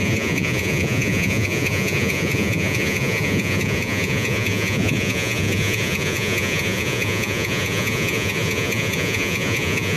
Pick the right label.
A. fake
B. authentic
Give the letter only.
A